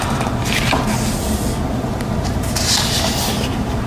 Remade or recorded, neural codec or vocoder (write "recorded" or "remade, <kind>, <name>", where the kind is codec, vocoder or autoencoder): remade, vocoder, BigVGAN v2